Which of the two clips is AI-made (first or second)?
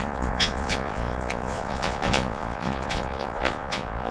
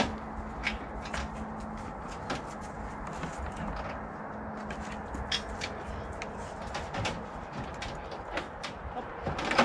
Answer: first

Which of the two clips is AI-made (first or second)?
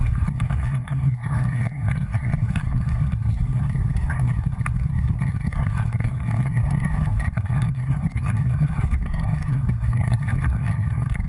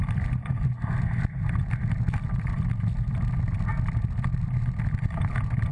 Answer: first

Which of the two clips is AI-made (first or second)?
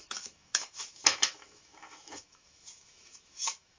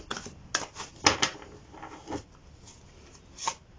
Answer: first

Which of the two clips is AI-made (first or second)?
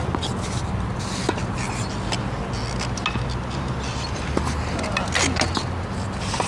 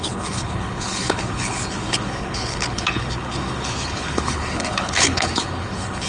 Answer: second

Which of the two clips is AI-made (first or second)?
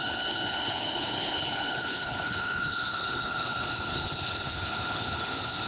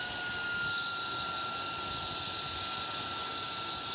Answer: first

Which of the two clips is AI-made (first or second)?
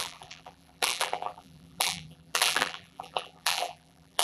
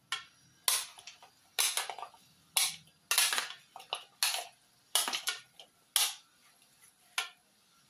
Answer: first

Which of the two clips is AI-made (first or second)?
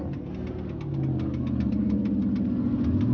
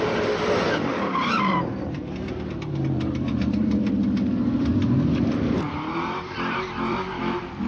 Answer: second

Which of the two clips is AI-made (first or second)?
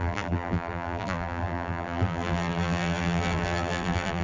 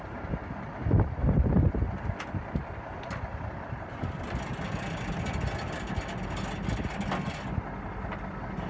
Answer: first